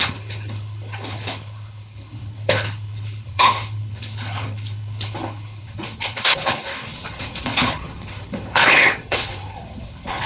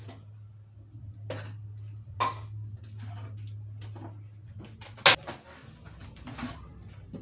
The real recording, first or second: second